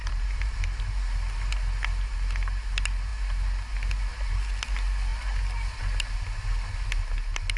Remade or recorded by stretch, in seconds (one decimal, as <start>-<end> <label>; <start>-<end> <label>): 0.0-0.8 remade; 0.8-7.6 recorded